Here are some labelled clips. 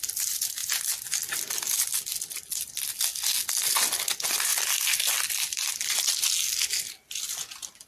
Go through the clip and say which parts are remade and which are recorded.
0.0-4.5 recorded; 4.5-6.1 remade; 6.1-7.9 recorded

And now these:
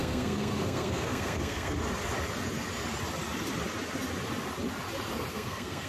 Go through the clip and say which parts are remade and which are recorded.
0.0-1.8 remade; 1.8-5.3 recorded; 5.3-5.9 remade